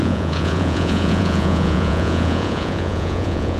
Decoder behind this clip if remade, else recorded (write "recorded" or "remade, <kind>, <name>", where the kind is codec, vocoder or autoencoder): remade, vocoder, Vocos